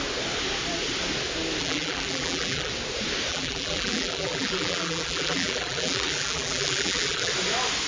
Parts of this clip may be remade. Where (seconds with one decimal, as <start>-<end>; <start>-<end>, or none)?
1.6-2.7; 3.3-7.3